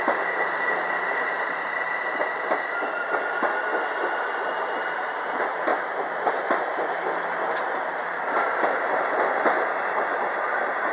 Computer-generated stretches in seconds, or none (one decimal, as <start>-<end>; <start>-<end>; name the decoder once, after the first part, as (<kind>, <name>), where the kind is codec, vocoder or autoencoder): 0.0-2.2 (vocoder, BigVGAN v2); 4.9-5.7; 6.5-10.9